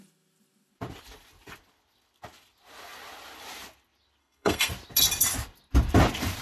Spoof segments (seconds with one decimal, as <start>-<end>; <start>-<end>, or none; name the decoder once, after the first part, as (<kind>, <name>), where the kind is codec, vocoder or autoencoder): 4.2-4.7 (codec, SNAC)